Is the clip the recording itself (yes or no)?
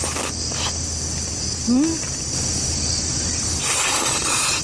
yes